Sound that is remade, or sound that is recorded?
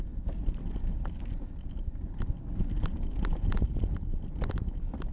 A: recorded